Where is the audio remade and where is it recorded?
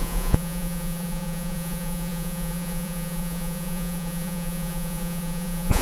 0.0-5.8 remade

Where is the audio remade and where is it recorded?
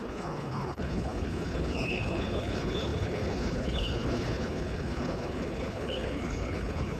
0.0-7.0 remade